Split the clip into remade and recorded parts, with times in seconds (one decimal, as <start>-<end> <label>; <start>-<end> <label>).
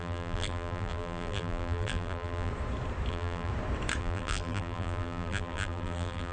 0.0-2.5 remade; 2.5-3.1 recorded; 3.1-3.5 remade; 3.5-4.0 recorded; 4.0-6.3 remade